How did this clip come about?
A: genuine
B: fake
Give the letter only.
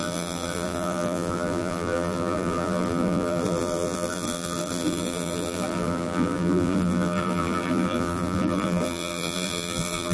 B